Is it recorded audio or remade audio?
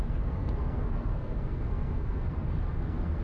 remade